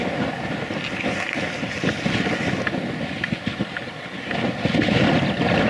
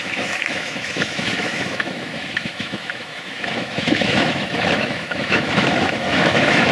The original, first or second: first